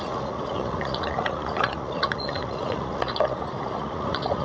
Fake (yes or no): yes